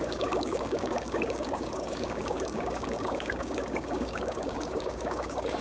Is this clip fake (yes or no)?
yes